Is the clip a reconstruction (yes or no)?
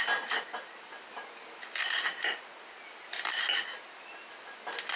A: no